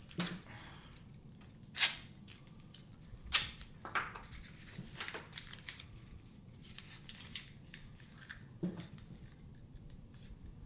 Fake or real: fake